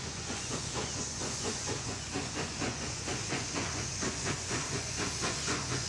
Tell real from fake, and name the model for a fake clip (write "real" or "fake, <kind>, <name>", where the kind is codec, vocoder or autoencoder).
fake, vocoder, Vocos